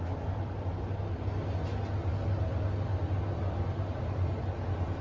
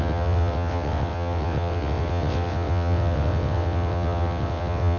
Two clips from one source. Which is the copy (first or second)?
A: second